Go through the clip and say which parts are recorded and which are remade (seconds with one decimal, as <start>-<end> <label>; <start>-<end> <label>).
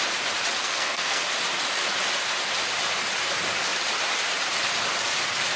0.0-0.6 recorded; 0.6-1.2 remade; 1.2-5.6 recorded